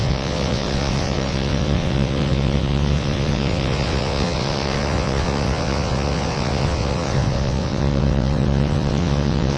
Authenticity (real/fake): fake